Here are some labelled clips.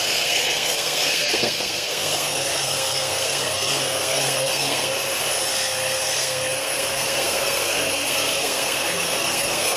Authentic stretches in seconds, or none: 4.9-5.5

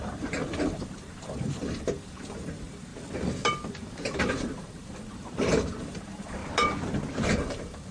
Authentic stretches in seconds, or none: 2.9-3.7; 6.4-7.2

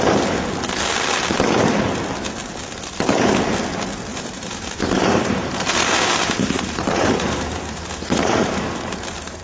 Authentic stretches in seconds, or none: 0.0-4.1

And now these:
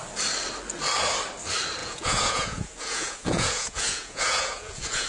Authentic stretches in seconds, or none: 0.0-1.8

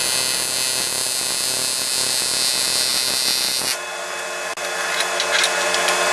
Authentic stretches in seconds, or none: 0.0-6.1

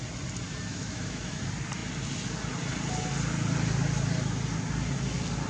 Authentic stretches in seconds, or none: 0.0-0.7; 1.4-5.5

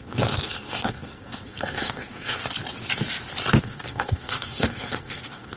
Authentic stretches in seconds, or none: 2.4-3.6